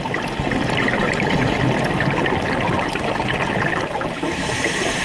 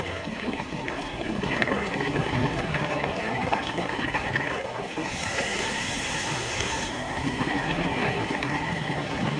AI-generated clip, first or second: second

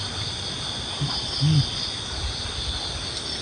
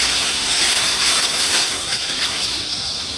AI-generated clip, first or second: second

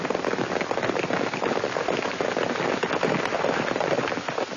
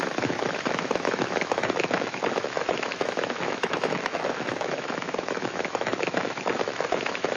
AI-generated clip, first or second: second